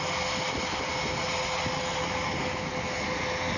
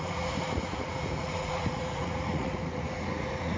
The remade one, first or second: second